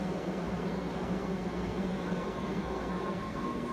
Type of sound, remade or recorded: remade